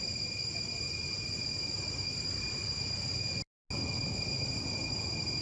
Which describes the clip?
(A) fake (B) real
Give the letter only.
B